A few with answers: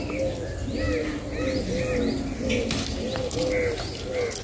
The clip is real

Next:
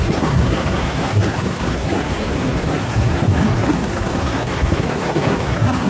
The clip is fake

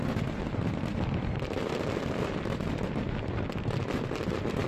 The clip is real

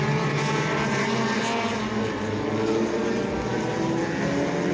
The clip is real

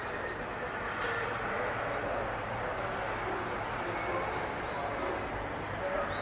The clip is real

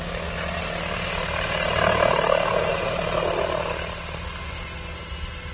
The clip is real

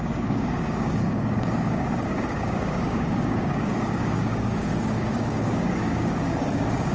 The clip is fake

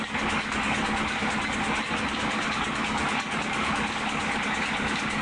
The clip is fake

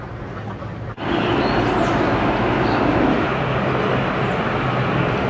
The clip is real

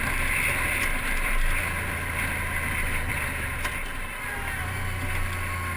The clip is real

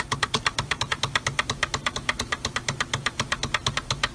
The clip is real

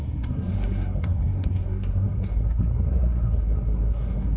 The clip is fake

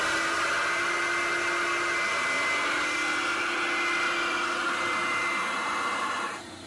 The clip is real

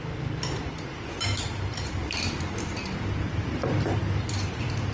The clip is real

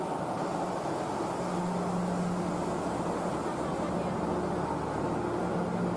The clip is real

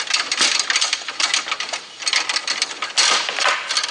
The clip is real